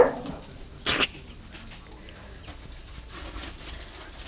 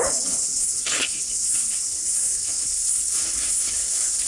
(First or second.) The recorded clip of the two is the first